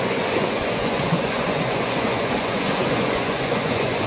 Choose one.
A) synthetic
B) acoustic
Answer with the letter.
A